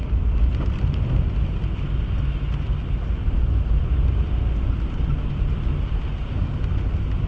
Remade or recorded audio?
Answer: recorded